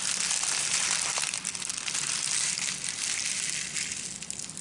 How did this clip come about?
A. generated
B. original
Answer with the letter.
B